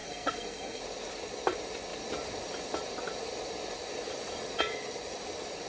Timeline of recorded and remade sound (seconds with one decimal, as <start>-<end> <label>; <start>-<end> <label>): 0.0-0.8 remade; 0.8-5.7 recorded